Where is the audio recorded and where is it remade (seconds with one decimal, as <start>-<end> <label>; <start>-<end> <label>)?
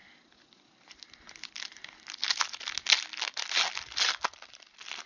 0.0-5.1 recorded